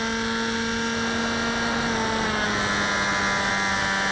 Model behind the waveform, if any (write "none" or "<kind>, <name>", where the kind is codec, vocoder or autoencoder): none